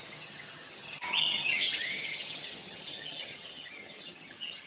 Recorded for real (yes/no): no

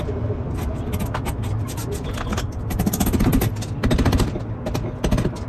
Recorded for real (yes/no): yes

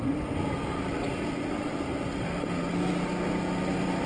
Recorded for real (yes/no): yes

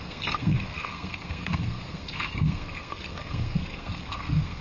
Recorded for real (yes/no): no